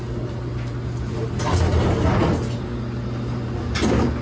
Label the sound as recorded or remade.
recorded